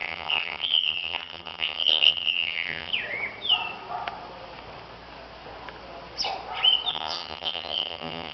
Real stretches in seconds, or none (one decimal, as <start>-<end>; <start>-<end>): 2.9-6.9